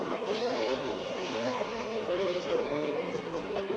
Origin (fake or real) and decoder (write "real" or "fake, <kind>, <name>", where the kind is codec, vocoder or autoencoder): fake, codec, SNAC